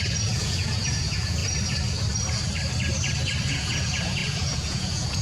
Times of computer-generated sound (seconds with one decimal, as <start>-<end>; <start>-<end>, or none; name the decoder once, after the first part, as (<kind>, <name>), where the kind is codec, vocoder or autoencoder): 0.0-1.4 (vocoder, Vocos); 3.5-5.2